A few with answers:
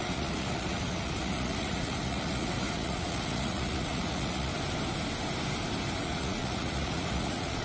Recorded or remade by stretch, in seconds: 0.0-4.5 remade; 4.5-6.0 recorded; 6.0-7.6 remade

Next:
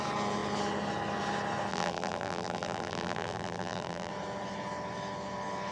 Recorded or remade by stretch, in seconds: 0.0-1.7 recorded; 1.7-4.1 remade; 4.1-5.7 recorded